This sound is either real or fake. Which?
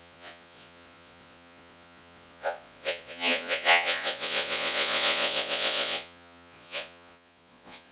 fake